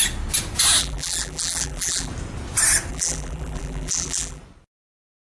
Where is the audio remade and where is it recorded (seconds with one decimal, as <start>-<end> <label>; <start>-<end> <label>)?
0.0-0.8 recorded; 0.8-2.1 remade; 2.1-2.9 recorded; 2.9-4.4 remade; 4.4-5.3 recorded